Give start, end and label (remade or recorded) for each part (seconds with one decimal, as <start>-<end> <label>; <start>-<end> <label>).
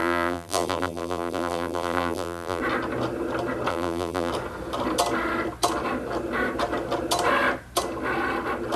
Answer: 0.0-2.6 remade; 2.6-3.7 recorded; 3.7-4.3 remade; 4.3-8.8 recorded